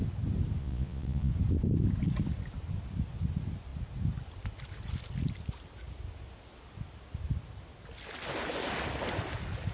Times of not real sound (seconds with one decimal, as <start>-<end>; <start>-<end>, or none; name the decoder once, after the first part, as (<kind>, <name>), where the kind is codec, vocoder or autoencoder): 0.6-1.3 (vocoder, Vocos)